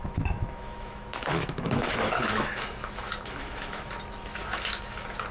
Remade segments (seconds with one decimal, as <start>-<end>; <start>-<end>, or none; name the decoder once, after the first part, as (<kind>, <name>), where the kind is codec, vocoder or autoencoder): 0.0-4.4 (autoencoder, DAC-VAE)

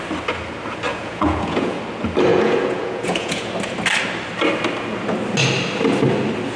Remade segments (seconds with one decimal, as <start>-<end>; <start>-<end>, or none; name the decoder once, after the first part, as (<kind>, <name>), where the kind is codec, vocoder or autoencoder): 0.9-1.8 (vocoder, Vocos); 2.3-3.5

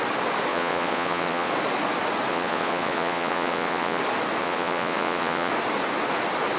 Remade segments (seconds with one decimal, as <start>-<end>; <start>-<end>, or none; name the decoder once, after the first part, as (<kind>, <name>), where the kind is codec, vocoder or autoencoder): 0.5-1.5 (vocoder, Vocos); 2.3-4.0; 4.4-5.5

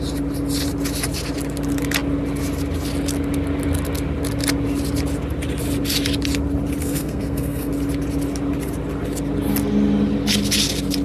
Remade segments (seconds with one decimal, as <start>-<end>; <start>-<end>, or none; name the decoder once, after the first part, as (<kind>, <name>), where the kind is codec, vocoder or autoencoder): 6.8-7.7 (codec, SNAC)

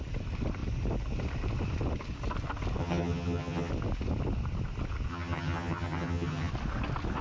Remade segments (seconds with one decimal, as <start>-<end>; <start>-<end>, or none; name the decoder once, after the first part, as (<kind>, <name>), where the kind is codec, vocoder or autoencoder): 2.8-3.7 (vocoder, HiFi-GAN); 5.1-6.5

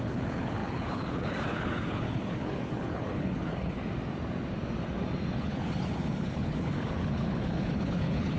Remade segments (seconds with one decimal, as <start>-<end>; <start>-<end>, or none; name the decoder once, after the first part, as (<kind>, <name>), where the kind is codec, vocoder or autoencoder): 0.0-3.8 (codec, HILCodec); 5.4-8.4

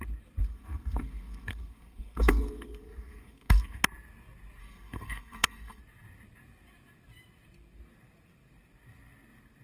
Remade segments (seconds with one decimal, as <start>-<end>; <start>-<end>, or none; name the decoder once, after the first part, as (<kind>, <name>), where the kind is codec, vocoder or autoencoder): 0.4-3.8 (codec, SNAC); 4.6-5.8

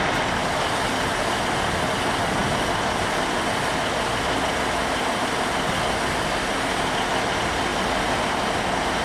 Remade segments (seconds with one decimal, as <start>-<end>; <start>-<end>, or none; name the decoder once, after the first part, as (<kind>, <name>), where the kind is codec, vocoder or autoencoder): none